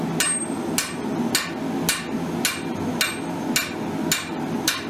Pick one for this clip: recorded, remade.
recorded